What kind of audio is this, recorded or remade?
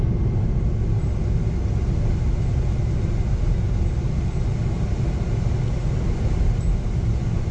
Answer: recorded